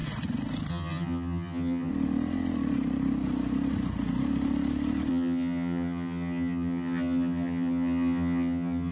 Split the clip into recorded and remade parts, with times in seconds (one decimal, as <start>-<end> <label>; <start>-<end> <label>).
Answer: 0.0-0.7 recorded; 0.7-1.9 remade; 1.9-5.1 recorded; 5.1-8.9 remade